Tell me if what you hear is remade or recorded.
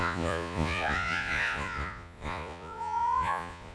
remade